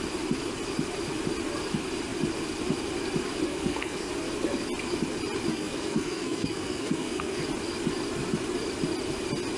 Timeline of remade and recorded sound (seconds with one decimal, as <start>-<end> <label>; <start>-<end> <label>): 0.0-3.5 recorded; 3.5-4.1 remade; 4.1-5.5 recorded; 5.5-7.4 remade; 7.4-9.6 recorded